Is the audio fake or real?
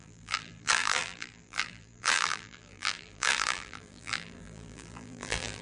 fake